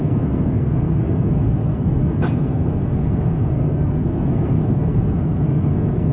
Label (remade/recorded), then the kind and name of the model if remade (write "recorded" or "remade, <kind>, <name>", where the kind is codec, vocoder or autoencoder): remade, codec, SNAC